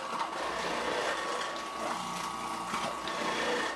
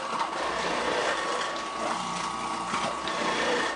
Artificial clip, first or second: second